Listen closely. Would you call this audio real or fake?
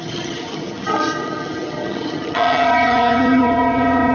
fake